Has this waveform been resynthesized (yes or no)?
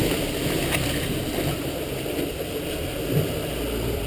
no